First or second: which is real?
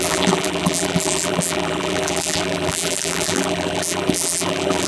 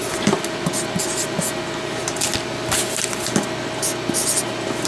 second